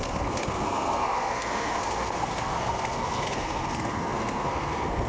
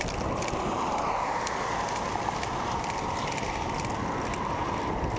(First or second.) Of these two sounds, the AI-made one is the first